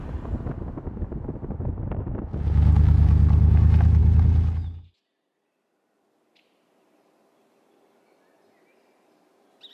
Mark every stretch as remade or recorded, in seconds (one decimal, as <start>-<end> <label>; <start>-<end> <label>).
0.0-9.7 recorded